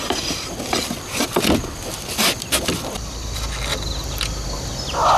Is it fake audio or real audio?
real